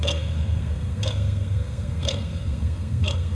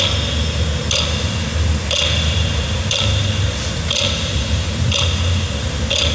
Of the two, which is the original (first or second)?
second